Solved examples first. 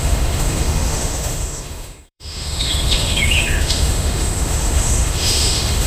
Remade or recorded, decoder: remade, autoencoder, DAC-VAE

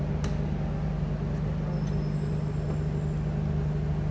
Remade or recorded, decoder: recorded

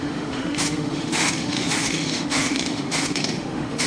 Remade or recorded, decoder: remade, autoencoder, DAC-VAE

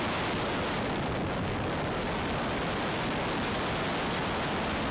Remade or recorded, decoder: recorded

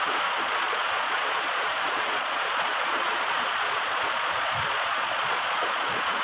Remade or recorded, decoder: remade, vocoder, Vocos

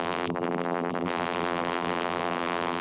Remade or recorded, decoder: remade, vocoder, BigVGAN v2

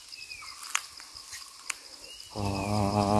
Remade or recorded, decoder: recorded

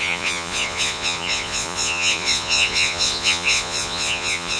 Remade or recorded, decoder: remade, vocoder, Vocos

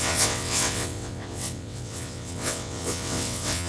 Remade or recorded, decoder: remade, vocoder, WaveNeXt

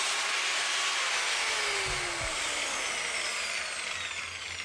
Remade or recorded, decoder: recorded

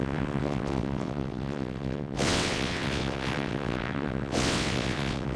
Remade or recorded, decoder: remade, vocoder, WaveNeXt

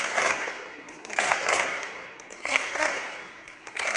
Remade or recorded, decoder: remade, codec, SNAC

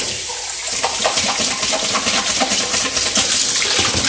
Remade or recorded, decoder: recorded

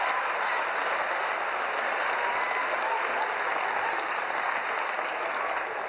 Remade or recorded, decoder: recorded